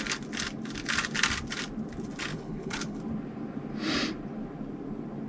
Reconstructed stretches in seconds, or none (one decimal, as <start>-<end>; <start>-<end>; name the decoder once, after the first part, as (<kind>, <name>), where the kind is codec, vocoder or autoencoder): 2.3-3.0 (codec, HILCodec)